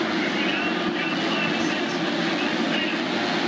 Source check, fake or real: real